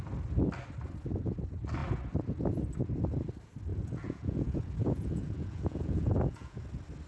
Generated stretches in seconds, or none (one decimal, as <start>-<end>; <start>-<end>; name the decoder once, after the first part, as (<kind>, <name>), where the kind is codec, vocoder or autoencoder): 3.7-6.6 (vocoder, Vocos)